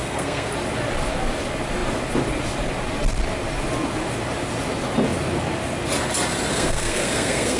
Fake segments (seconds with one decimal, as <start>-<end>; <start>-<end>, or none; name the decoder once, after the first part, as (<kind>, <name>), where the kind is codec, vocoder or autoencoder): 0.0-0.5 (codec, SNAC); 6.5-7.6